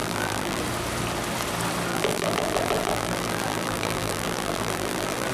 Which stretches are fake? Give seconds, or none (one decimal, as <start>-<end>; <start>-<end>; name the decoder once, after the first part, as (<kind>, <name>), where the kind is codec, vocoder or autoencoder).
0.0-0.6 (vocoder, BigVGAN v2); 1.9-5.3